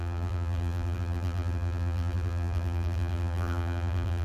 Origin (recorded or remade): remade